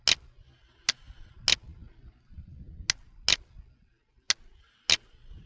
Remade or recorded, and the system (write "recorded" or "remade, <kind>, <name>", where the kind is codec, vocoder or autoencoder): recorded